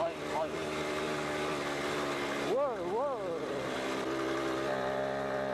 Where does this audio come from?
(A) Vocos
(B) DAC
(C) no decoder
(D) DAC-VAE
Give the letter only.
C